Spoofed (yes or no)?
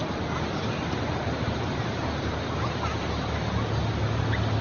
no